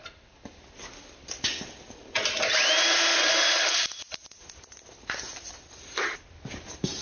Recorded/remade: recorded